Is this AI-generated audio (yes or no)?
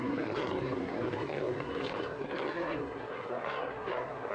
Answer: yes